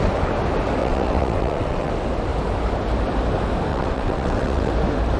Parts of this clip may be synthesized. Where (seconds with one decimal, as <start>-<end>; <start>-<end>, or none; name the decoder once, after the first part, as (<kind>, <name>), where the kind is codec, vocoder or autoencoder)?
0.8-1.9 (vocoder, WaveNeXt); 3.7-4.7